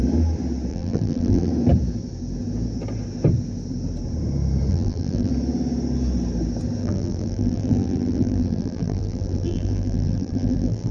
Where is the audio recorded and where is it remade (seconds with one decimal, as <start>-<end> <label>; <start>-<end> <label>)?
0.0-0.7 recorded; 0.7-1.5 remade; 1.5-4.7 recorded; 4.7-5.3 remade; 5.3-6.8 recorded; 6.8-10.9 remade